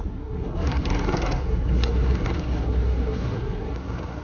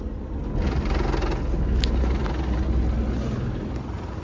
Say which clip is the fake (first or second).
first